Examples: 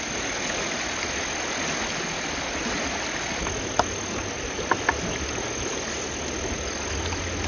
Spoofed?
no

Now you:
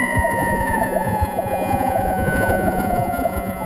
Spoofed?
yes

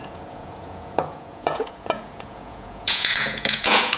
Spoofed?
yes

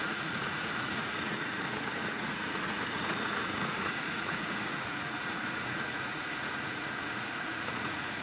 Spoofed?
yes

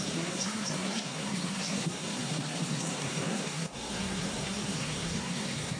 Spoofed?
yes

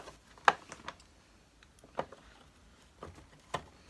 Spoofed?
no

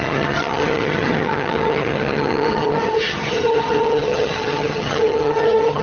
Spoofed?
yes